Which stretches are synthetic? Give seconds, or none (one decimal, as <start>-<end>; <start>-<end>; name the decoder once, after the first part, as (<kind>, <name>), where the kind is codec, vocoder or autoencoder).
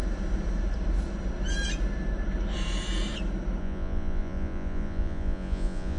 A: 3.6-6.0 (vocoder, Vocos)